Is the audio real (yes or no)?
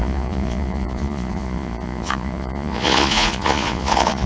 no